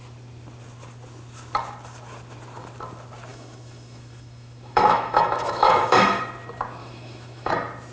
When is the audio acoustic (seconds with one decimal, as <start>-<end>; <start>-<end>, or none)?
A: 0.0-3.3; 6.2-6.8; 7.5-7.9